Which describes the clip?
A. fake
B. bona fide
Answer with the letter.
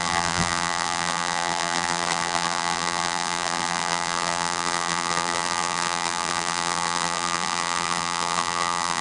A